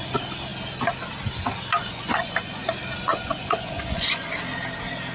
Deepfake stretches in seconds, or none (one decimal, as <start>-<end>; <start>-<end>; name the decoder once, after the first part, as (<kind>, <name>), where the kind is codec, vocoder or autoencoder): 1.8-2.7 (vocoder, Vocos); 3.1-4.3